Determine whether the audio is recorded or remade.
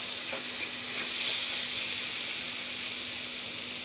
recorded